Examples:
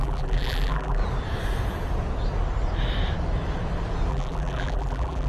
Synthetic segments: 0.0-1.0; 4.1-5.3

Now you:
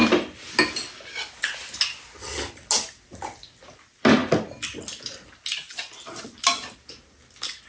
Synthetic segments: none

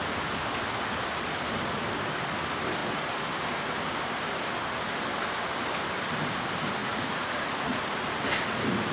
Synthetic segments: 6.8-7.8

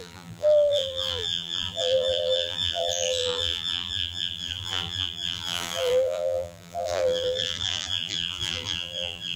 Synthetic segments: 0.0-9.4

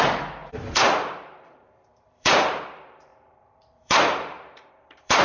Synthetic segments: 0.0-5.2